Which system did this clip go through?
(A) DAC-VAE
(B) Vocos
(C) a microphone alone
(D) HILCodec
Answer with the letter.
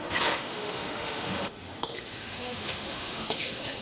A